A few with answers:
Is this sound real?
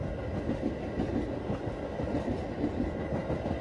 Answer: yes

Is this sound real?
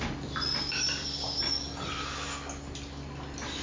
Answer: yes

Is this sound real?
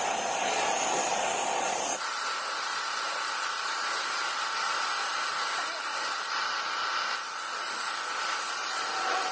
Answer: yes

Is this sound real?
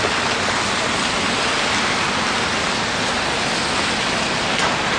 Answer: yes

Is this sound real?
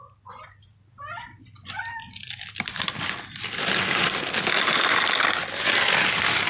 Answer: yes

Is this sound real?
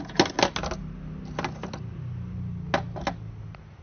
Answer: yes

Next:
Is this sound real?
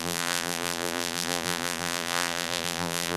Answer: no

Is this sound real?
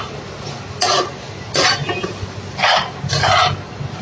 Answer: yes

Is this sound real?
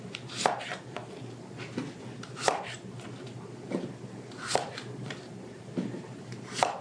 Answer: yes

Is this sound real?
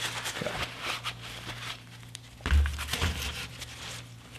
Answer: no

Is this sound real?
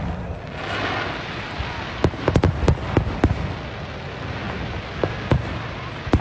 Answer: yes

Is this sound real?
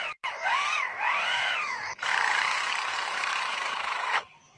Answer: no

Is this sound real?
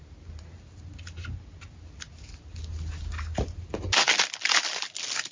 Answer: yes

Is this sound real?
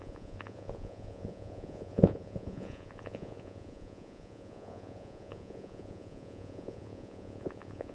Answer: no